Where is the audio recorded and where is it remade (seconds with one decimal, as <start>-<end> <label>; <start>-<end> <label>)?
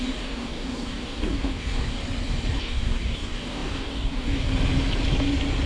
0.0-2.0 remade; 2.0-2.6 recorded; 2.6-4.5 remade; 4.5-5.7 recorded